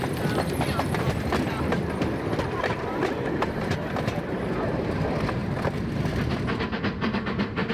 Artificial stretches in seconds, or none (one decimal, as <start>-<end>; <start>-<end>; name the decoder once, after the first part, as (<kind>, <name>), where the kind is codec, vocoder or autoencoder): 0.0-5.4 (vocoder, BigVGAN v2); 6.8-7.7